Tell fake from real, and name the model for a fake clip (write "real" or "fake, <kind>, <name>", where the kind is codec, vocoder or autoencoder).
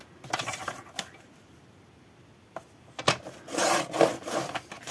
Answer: real